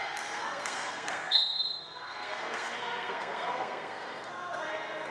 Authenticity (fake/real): fake